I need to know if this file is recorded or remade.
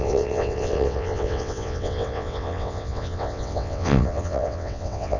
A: remade